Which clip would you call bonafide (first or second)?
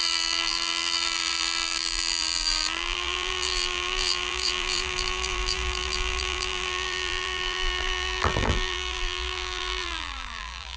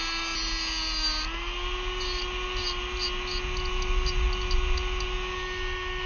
second